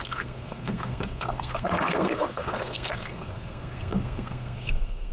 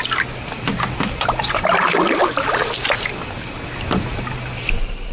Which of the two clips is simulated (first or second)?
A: first